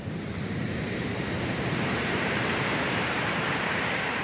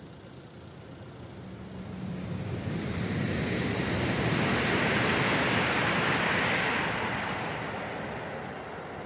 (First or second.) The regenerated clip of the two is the first